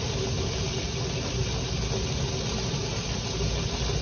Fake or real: real